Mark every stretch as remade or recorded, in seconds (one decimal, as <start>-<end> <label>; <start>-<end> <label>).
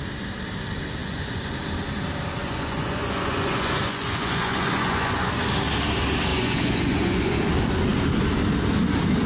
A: 0.0-1.0 recorded; 1.0-1.5 remade; 1.5-2.4 recorded; 2.4-5.3 remade; 5.3-6.3 recorded; 6.3-7.4 remade; 7.4-9.3 recorded